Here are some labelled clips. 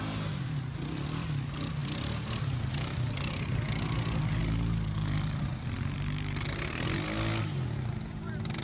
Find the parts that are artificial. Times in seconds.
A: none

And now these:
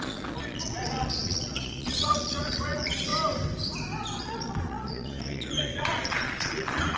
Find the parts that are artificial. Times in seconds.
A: 0.0-3.1; 4.2-7.0

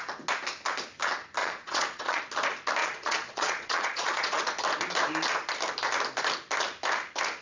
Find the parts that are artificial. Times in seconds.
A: 1.4-2.2; 2.8-4.4

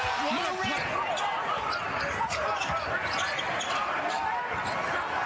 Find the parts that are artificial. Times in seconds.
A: none

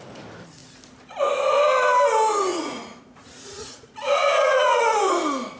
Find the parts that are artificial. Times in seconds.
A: 2.5-4.8

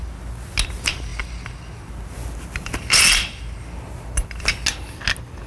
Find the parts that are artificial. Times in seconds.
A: none

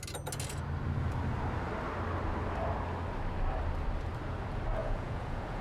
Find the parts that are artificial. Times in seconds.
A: 4.8-5.6

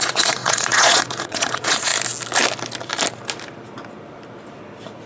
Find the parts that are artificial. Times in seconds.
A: 0.0-1.9